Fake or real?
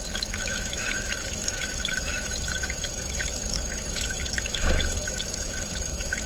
fake